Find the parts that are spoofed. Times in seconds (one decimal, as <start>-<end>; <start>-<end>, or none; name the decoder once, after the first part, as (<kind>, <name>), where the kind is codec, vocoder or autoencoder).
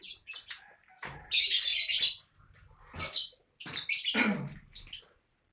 none